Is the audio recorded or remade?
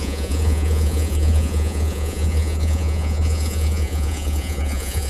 remade